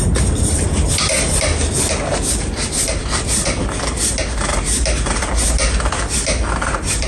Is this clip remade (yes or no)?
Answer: no